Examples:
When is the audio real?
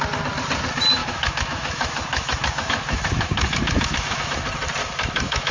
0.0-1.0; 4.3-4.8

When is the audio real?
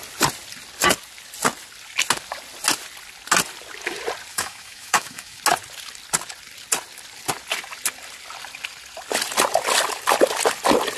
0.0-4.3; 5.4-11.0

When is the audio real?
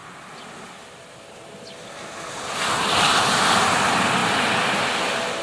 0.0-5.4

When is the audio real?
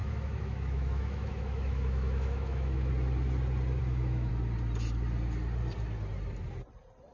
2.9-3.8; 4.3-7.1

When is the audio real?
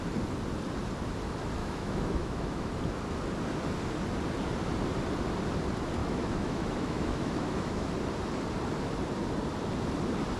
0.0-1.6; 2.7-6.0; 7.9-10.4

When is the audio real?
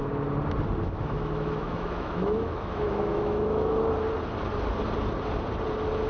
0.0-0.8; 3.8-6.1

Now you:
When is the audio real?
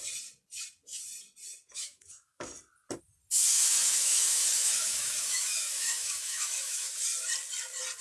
0.0-1.7; 2.5-3.5; 6.9-8.0